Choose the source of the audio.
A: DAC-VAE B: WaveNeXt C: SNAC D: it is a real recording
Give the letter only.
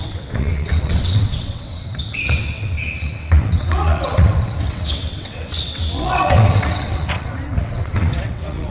B